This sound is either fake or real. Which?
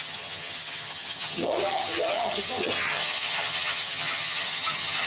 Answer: fake